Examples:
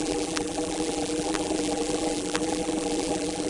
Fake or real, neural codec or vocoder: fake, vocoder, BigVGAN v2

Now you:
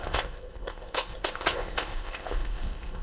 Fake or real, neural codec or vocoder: fake, codec, ZipCodec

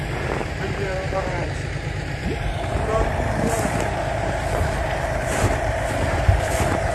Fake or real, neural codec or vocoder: fake, vocoder, BigVGAN v2